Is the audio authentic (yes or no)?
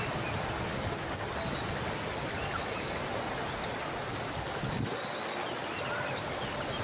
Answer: yes